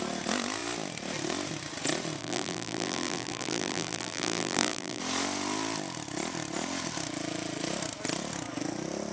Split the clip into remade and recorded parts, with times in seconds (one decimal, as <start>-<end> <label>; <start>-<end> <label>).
0.0-2.2 recorded; 2.2-5.0 remade; 5.0-9.1 recorded